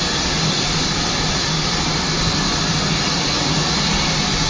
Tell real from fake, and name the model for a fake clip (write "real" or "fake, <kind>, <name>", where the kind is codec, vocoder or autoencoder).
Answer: real